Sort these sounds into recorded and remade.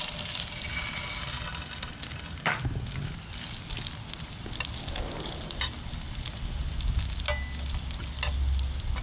recorded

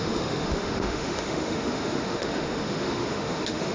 remade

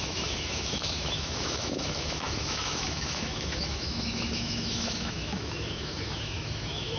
remade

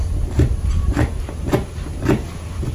recorded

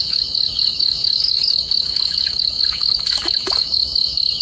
remade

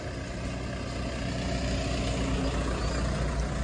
recorded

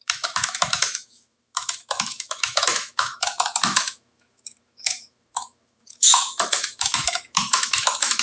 remade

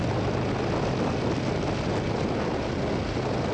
recorded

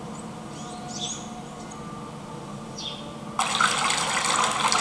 recorded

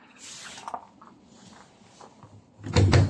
recorded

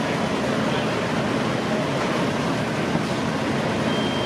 recorded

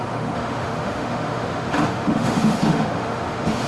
remade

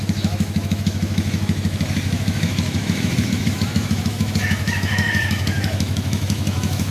remade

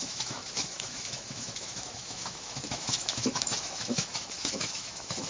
remade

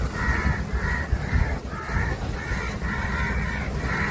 recorded